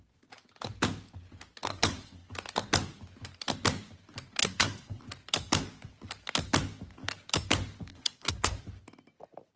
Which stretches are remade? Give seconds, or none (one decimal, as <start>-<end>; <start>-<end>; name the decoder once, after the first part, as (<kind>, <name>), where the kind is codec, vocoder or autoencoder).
1.7-2.3 (codec, SNAC); 4.4-5.0; 7.9-8.6